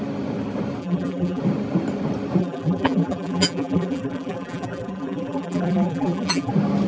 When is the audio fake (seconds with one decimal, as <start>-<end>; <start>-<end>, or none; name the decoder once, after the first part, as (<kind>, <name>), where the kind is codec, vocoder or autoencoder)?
0.8-1.4 (vocoder, BigVGAN v2); 2.4-6.5